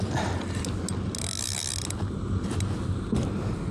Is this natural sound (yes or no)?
yes